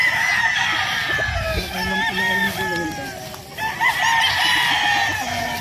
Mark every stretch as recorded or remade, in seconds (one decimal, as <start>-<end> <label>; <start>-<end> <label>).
0.0-5.6 recorded